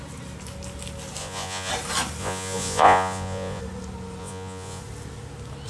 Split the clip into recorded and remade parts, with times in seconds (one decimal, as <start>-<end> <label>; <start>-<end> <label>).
0.0-1.2 recorded; 1.2-1.7 remade; 1.7-2.2 recorded; 2.2-3.6 remade; 3.6-4.2 recorded; 4.2-4.8 remade; 4.8-5.7 recorded